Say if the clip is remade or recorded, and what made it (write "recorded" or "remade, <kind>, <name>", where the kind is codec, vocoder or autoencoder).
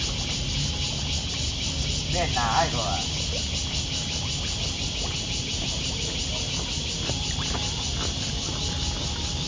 recorded